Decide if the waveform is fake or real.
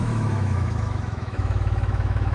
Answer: fake